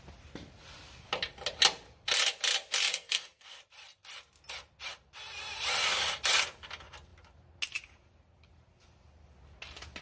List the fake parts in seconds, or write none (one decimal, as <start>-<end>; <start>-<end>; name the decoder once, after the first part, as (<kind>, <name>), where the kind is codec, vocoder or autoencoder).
2.9-3.6 (codec, SNAC)

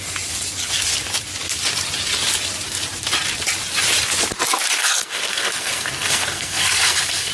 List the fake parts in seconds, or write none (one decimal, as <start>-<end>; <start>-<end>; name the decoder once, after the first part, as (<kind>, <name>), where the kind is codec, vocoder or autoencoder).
4.8-7.3 (codec, SNAC)

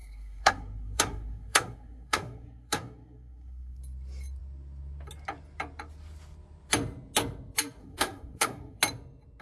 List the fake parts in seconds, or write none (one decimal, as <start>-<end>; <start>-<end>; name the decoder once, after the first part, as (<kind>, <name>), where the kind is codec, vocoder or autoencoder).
0.0-3.8 (codec, SNAC); 7.8-8.8

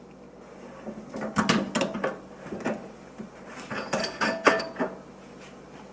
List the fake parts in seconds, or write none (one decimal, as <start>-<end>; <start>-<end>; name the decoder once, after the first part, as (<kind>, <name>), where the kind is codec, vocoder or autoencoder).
4.0-4.6 (codec, SNAC)

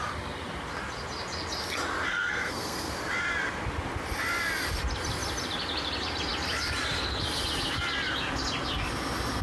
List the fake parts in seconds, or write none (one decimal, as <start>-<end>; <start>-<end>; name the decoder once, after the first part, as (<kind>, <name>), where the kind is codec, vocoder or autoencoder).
2.1-2.9 (codec, SNAC)

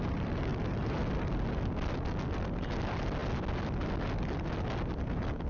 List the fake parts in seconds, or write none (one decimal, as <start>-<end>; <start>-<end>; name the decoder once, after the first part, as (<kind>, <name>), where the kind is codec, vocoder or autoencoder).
none